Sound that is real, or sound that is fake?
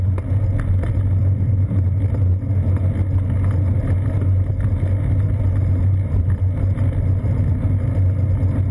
real